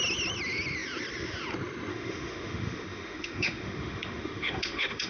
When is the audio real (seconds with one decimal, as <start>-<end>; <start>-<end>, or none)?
0.0-1.9